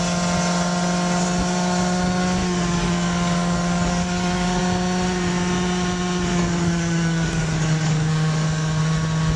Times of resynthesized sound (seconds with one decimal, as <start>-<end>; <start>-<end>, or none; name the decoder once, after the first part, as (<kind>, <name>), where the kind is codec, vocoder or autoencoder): 2.4-4.6 (codec, DAC); 6.3-8.8